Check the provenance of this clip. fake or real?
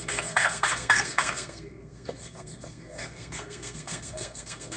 fake